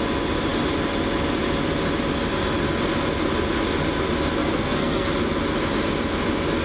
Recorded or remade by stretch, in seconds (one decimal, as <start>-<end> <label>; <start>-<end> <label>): 0.0-4.4 recorded; 4.4-5.1 remade; 5.1-6.6 recorded